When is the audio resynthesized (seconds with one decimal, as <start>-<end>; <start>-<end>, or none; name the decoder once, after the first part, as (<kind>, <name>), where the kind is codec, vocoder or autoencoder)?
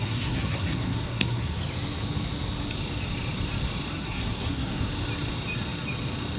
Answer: 0.0-1.6 (codec, SNAC); 3.9-4.9